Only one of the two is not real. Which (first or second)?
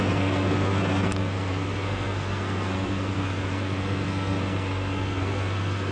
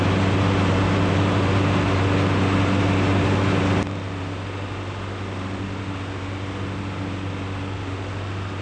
first